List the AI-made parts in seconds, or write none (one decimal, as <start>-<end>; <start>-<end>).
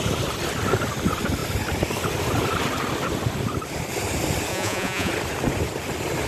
4.5-5.1